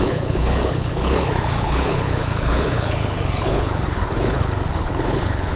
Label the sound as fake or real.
fake